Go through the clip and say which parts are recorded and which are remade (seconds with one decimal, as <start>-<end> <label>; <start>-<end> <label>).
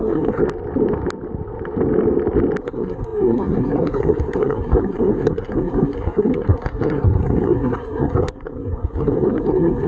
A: 0.0-0.4 remade; 0.4-2.6 recorded; 2.6-9.9 remade